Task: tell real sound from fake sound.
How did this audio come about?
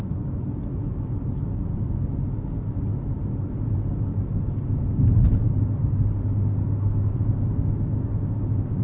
real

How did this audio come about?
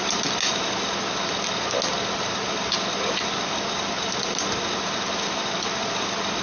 real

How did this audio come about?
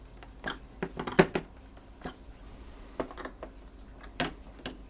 real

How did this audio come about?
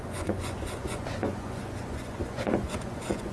fake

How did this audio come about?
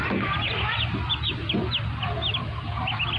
real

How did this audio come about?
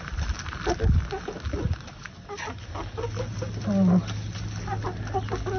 real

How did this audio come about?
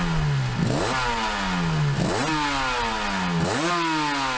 real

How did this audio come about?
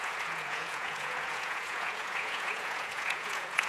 fake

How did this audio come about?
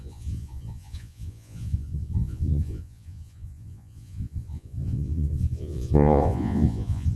fake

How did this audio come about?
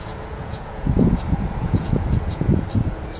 fake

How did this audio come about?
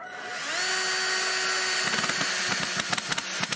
real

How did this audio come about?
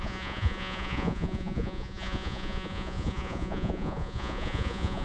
fake